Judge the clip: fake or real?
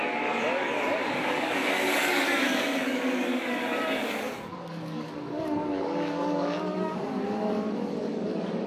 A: fake